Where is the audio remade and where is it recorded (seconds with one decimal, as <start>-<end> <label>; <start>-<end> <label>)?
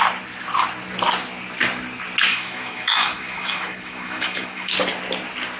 0.0-2.3 recorded; 2.3-4.7 remade; 4.7-5.6 recorded